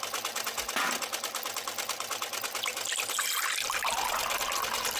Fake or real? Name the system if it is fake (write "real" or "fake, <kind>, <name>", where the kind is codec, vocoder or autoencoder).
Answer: real